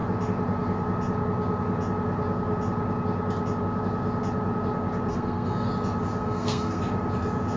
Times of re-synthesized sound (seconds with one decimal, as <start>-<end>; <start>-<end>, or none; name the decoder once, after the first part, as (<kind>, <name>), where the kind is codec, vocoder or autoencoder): 5.1-5.7 (codec, SNAC); 6.2-6.8